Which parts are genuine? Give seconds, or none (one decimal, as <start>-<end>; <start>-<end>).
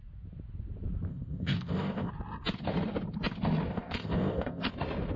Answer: 0.0-1.1; 2.1-3.7; 4.7-5.2